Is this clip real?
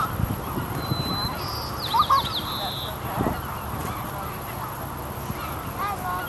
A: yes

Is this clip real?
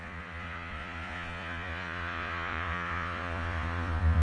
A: no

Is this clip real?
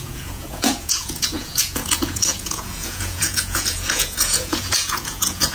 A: no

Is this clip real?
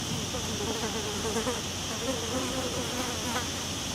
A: yes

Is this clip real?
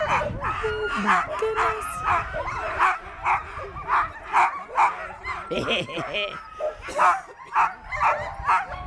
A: yes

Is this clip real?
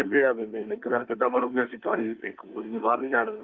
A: no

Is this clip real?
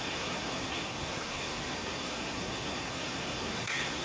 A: no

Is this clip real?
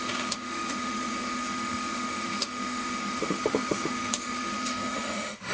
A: no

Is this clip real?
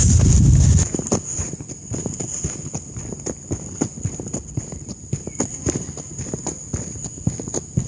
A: yes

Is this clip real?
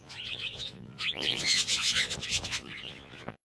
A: no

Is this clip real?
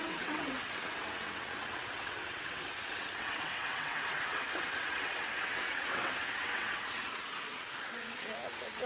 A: no